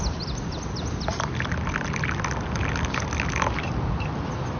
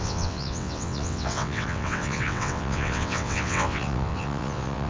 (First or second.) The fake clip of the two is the second